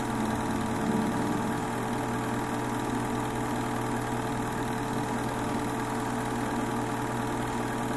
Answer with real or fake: real